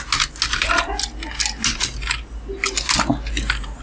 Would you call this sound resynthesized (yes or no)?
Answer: no